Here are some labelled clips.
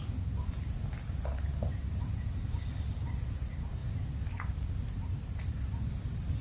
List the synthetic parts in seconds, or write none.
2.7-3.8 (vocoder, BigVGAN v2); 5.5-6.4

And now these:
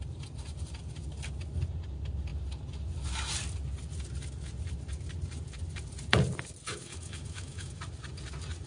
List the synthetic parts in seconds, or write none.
6.7-7.8 (autoencoder, DAC-VAE)